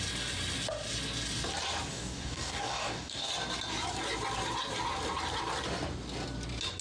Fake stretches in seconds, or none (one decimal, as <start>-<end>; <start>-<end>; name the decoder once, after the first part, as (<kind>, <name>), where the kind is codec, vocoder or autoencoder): 1.9-3.3 (codec, DAC)

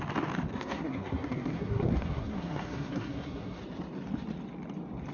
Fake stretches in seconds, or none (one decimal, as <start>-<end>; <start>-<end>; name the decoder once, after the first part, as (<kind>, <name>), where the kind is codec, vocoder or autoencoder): 0.5-3.6 (codec, SNAC)

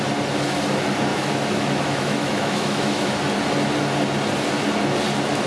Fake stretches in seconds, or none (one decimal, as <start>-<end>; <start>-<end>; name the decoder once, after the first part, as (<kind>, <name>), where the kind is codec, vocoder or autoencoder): 1.1-3.1 (autoencoder, DAC-VAE)

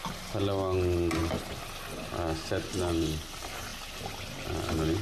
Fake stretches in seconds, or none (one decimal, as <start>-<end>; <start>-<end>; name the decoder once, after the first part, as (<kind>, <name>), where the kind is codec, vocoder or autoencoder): none

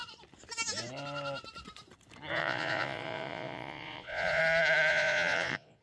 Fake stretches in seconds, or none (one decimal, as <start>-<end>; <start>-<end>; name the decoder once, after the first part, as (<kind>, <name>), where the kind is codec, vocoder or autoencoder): 2.4-4.4 (vocoder, Vocos); 4.9-5.8

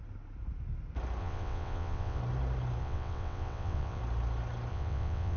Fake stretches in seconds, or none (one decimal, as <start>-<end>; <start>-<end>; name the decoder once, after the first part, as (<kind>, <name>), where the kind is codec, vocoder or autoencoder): 1.2-2.2 (vocoder, WaveNeXt); 2.8-4.0; 4.7-5.4

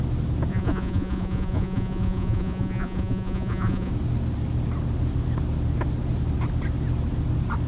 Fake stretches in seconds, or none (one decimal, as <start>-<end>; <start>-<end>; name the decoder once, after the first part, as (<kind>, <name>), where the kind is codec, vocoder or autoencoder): 0.5-3.9 (vocoder, Vocos)

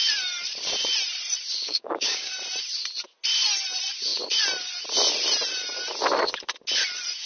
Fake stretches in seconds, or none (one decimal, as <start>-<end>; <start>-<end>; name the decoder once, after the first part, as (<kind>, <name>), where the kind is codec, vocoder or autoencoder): 1.6-2.3 (codec, DAC)